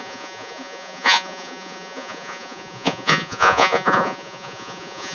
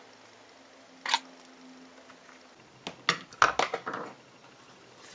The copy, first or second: first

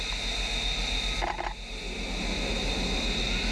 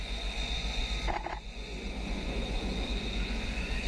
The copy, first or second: second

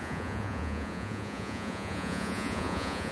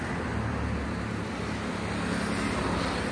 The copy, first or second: first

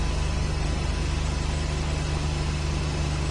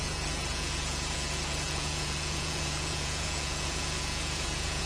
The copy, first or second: second